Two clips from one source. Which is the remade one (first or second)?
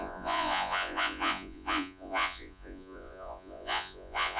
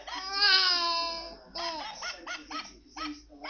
first